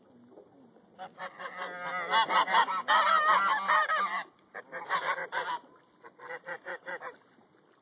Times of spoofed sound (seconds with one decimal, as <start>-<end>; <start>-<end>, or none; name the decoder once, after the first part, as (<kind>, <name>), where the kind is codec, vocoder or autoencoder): 3.5-5.8 (vocoder, BigVGAN v2)